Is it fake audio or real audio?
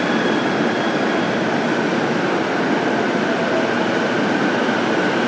real